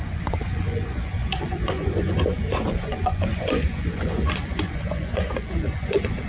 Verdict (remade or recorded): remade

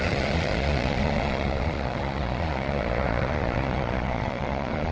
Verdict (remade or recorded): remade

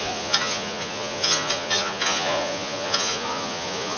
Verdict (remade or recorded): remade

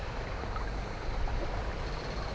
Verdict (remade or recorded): remade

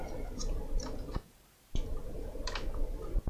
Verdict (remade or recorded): recorded